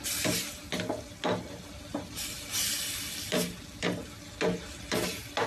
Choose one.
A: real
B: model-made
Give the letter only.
A